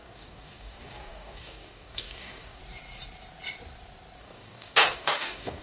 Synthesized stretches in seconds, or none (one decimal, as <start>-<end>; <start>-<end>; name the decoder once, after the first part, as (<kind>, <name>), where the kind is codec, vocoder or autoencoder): 0.0-2.6 (codec, DAC); 4.2-5.6